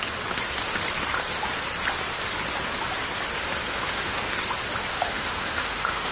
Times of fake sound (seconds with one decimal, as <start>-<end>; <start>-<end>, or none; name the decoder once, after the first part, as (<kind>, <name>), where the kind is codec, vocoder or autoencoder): 3.7-4.4 (autoencoder, DAC-VAE); 4.9-6.1